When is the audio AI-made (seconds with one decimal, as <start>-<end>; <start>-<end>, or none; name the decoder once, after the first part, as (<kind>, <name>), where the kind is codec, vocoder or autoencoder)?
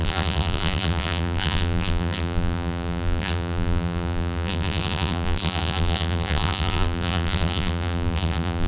0.0-8.7 (vocoder, BigVGAN v2)